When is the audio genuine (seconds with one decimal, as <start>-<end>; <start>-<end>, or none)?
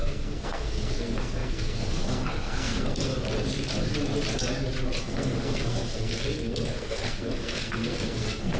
3.1-5.0